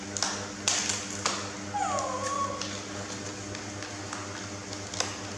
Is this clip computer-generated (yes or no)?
no